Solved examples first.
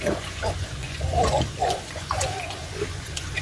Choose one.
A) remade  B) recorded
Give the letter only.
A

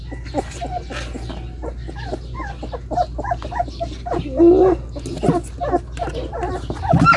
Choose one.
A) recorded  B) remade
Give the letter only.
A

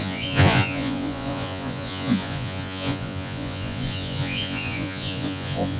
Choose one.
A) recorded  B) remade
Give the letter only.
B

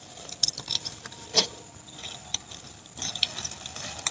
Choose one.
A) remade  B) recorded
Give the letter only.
B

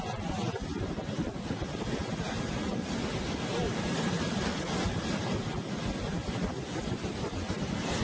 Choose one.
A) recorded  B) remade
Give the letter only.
A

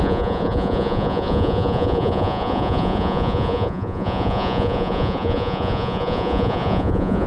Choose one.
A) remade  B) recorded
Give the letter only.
A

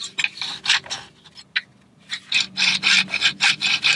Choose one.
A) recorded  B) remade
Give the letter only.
A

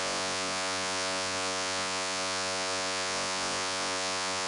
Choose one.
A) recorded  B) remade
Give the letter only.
B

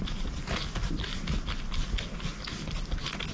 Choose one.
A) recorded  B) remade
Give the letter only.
A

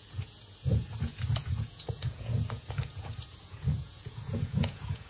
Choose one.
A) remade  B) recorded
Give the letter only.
A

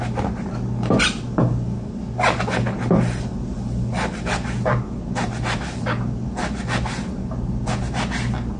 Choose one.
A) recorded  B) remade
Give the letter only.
A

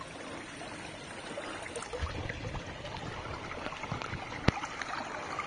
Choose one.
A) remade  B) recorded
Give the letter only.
B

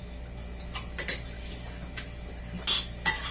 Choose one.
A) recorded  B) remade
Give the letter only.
A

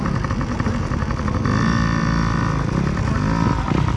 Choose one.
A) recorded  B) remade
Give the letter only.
A